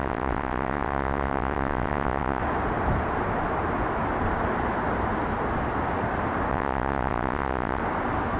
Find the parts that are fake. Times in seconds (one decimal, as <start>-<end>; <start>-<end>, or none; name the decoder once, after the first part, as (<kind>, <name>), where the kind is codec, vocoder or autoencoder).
0.0-2.4 (vocoder, WaveNeXt); 6.5-7.8